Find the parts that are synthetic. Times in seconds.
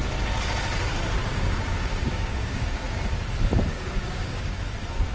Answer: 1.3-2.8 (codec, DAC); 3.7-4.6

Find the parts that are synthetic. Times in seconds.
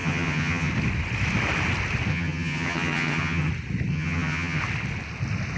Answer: 0.0-0.7 (vocoder, HiFi-GAN); 2.1-3.5; 3.9-4.6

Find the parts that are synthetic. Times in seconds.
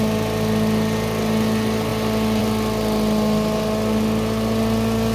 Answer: none